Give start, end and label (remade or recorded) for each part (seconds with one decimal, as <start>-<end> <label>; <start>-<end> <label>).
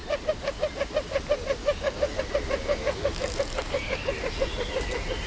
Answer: 0.0-1.6 recorded; 1.6-2.2 remade; 2.2-2.7 recorded; 2.7-4.1 remade; 4.1-5.3 recorded